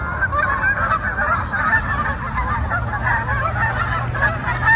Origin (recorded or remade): recorded